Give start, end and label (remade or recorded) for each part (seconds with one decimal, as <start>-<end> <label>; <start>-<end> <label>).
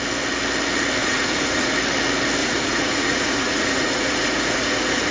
0.0-1.0 recorded; 1.0-1.7 remade; 1.7-2.4 recorded; 2.4-5.1 remade